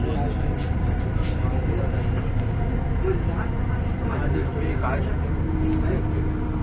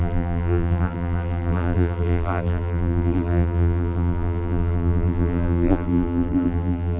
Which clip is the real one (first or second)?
first